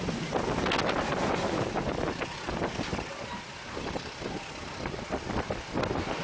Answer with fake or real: real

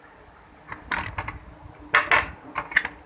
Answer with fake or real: real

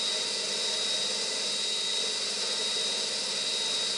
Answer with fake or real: real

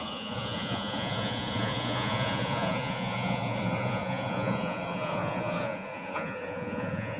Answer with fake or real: fake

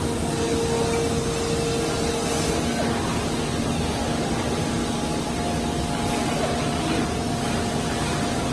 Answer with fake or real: real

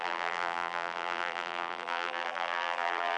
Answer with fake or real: fake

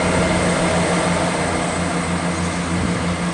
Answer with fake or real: real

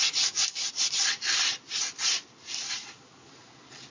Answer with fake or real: real